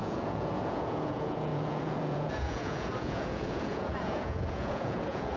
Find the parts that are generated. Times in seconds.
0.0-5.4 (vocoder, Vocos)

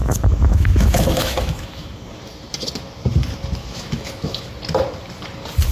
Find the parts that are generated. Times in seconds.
0.0-2.1 (autoencoder, DAC-VAE); 3.6-4.4

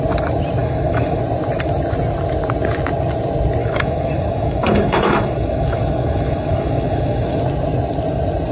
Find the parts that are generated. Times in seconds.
0.6-1.2 (autoencoder, DAC-VAE); 3.6-7.4

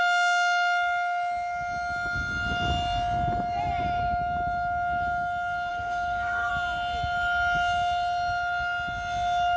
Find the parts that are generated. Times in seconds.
5.7-6.5 (codec, SNAC)

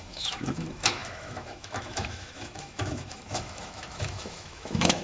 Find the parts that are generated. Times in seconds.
0.0-5.0 (autoencoder, DAC-VAE)

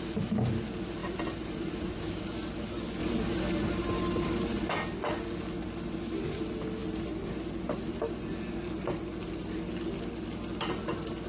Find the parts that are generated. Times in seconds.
1.0-1.7 (vocoder, BigVGAN v2); 3.0-4.7

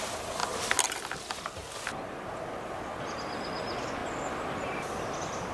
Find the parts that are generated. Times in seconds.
none